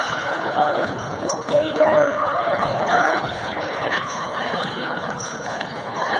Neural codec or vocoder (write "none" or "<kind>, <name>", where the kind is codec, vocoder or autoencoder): codec, HILCodec